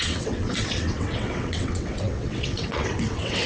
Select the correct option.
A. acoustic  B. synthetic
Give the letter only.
B